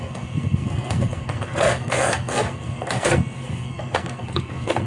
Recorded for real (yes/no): no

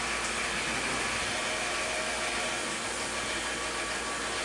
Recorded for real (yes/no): yes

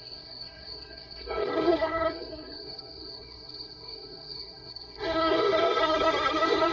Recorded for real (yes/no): no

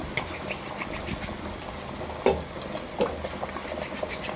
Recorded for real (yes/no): yes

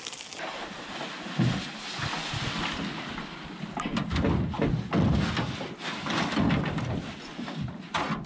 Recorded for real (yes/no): yes